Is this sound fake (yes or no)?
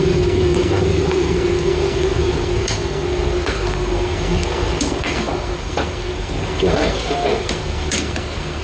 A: yes